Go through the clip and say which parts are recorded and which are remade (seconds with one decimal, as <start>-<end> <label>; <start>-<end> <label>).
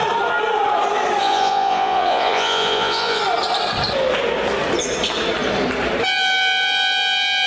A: 0.0-1.2 recorded; 1.2-3.2 remade; 3.2-7.5 recorded